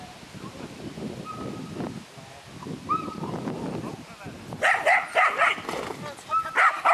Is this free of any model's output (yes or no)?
yes